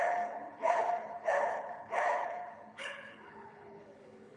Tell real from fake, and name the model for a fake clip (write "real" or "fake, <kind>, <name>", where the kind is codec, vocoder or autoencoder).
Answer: fake, codec, HILCodec